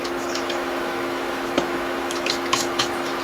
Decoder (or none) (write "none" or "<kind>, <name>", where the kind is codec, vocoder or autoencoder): autoencoder, DAC-VAE